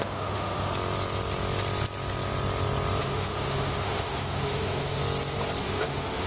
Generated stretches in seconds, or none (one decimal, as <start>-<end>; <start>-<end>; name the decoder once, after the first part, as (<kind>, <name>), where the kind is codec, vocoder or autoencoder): 0.0-0.7 (autoencoder, DAC-VAE); 3.0-5.0; 5.6-6.3